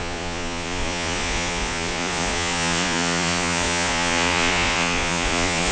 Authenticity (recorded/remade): remade